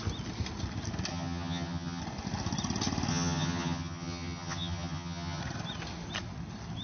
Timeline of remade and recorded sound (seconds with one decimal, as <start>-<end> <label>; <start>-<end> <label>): 0.0-1.1 recorded; 1.1-2.0 remade; 2.0-3.1 recorded; 3.1-5.4 remade; 5.4-6.8 recorded